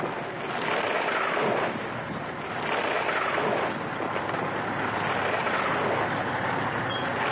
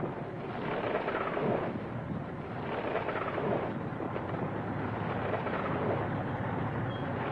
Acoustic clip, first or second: first